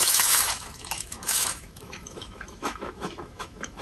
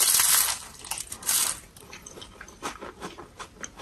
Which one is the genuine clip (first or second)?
second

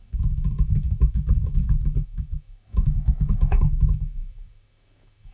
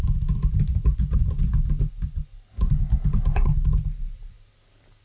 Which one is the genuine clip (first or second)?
second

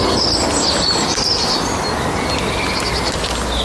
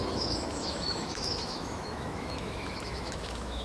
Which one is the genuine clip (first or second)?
first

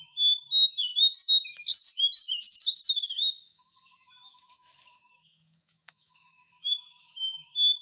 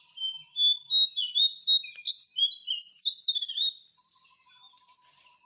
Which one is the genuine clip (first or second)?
second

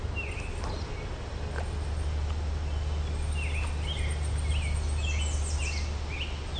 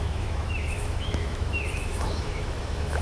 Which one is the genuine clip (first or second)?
first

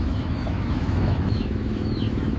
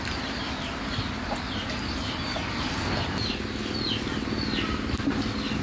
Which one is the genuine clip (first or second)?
second